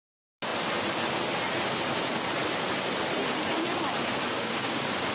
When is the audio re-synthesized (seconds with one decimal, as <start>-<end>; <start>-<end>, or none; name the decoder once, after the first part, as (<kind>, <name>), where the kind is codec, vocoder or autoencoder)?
4.3-5.1 (codec, DAC)